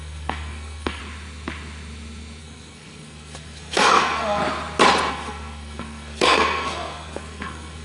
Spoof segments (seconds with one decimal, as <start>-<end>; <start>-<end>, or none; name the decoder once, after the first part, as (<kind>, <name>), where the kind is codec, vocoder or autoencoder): 0.0-1.0 (codec, SNAC); 2.4-4.4; 5.1-7.8